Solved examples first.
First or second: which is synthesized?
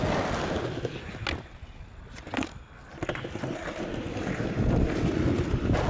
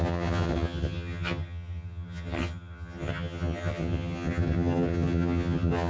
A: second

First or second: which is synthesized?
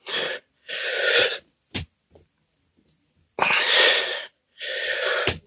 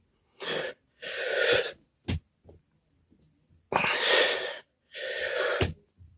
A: first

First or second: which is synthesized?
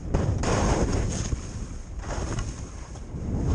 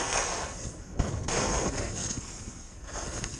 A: second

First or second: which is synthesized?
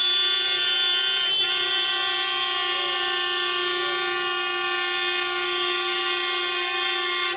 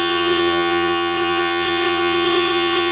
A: second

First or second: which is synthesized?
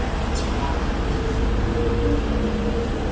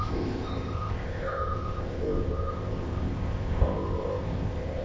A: second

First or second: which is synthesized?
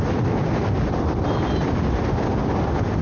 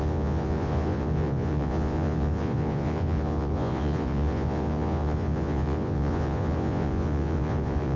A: second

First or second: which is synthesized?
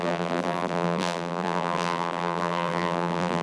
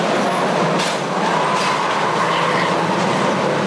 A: first